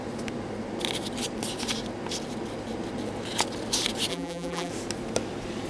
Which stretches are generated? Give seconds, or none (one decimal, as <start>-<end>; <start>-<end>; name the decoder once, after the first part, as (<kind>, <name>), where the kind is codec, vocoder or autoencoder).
4.1-4.7 (vocoder, BigVGAN v2)